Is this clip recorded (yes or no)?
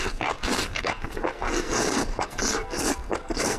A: no